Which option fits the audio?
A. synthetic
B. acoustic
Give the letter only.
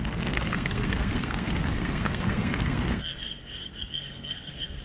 A